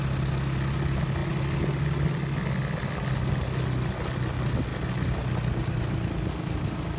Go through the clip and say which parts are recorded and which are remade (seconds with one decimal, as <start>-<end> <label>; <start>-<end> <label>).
0.0-7.0 recorded